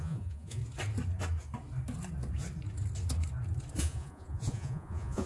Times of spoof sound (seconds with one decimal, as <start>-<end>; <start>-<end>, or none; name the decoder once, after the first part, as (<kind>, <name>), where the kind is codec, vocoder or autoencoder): 0.0-0.6 (vocoder, Vocos); 3.8-5.3